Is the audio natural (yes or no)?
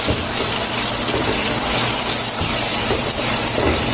yes